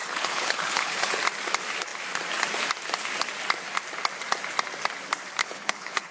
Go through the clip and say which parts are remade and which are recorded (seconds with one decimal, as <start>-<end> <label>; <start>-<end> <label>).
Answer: 0.0-1.2 remade; 1.2-5.4 recorded; 5.4-6.1 remade